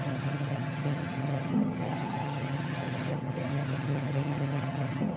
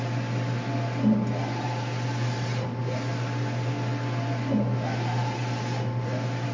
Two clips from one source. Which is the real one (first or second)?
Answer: second